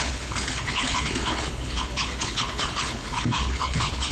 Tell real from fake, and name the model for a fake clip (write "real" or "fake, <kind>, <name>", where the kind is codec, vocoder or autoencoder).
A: fake, codec, HILCodec